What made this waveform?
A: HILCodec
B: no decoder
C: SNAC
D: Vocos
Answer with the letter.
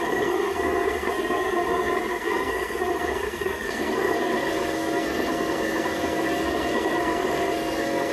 C